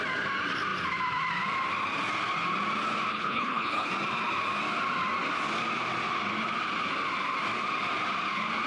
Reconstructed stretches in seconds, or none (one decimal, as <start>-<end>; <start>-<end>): 3.1-3.9